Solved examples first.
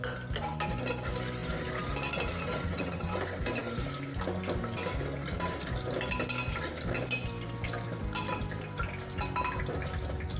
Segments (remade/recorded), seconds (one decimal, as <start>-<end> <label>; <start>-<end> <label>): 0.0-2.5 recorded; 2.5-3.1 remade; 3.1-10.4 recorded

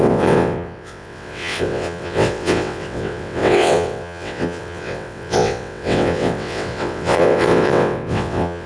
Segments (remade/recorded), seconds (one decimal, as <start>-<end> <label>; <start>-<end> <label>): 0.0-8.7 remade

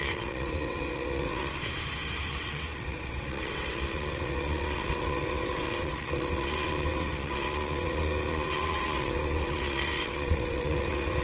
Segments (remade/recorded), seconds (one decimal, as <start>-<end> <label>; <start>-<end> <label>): 0.0-1.6 remade; 1.6-2.3 recorded; 2.3-11.2 remade

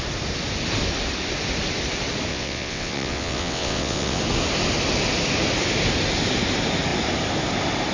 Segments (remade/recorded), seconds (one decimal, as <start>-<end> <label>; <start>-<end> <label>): 0.0-2.3 recorded; 2.3-4.2 remade; 4.2-7.9 recorded

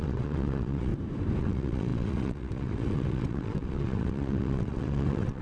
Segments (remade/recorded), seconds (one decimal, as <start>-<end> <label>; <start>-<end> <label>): 0.0-0.9 remade; 0.9-1.4 recorded; 1.4-5.4 remade

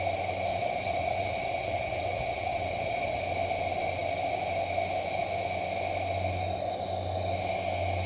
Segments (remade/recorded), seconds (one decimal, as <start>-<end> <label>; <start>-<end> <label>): 0.0-0.5 recorded; 0.5-3.2 remade; 3.2-8.1 recorded

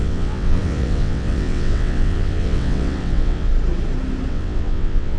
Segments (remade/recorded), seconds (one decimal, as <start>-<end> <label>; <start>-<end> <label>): 0.0-3.5 remade; 3.5-4.3 recorded; 4.3-5.2 remade

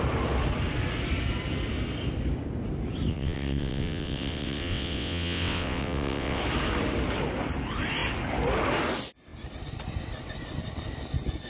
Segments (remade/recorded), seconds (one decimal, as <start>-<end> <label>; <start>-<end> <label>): 0.0-3.1 recorded; 3.1-6.4 remade; 6.4-11.5 recorded